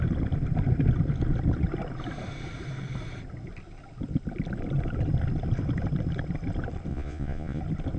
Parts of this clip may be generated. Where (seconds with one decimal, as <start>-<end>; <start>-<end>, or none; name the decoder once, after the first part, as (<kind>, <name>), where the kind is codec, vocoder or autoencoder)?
6.9-7.6 (vocoder, Vocos)